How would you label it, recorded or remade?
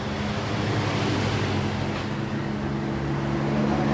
recorded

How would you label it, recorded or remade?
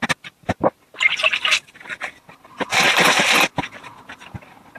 recorded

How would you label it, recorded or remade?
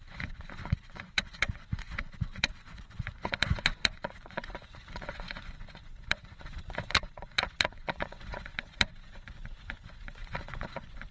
remade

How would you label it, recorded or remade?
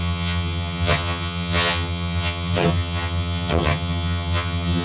remade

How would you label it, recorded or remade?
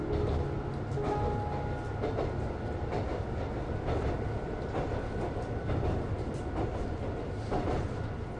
recorded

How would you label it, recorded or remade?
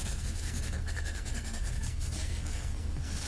remade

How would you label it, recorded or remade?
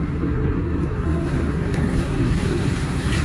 remade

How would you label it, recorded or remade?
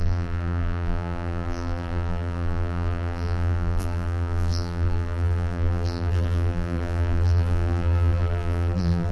remade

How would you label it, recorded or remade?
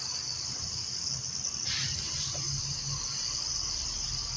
recorded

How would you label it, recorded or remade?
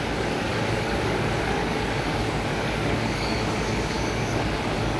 remade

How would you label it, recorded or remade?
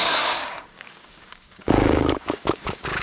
remade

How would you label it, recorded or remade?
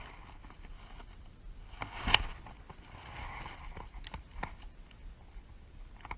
recorded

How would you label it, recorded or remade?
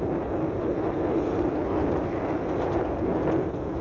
recorded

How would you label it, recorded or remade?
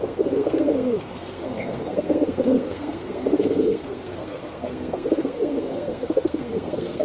remade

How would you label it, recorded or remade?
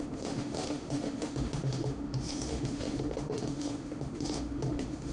remade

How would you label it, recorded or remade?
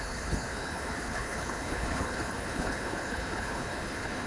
remade